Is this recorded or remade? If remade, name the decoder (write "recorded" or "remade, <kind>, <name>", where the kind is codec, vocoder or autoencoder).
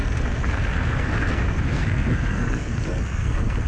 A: remade, codec, SNAC